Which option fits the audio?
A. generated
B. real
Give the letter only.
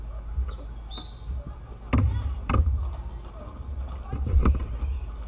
B